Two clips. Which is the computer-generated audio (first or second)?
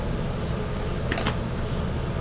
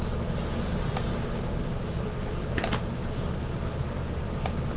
second